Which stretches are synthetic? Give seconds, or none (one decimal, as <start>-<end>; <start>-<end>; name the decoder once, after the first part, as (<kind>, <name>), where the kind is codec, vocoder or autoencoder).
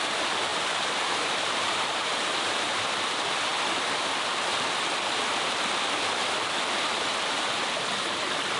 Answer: 0.5-2.7 (vocoder, BigVGAN v2)